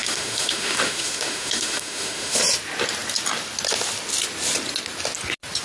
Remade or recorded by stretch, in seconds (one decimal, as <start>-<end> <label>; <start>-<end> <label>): 0.0-2.4 remade; 2.4-5.6 recorded